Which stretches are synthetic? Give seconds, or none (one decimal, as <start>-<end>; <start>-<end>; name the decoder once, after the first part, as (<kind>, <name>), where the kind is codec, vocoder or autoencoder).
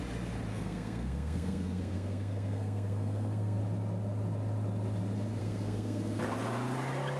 0.5-3.6 (codec, SNAC); 5.4-6.2